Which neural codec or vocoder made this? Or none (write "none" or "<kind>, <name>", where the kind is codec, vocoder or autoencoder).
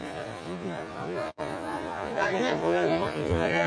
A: vocoder, Vocos